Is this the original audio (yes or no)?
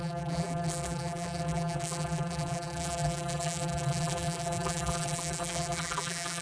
no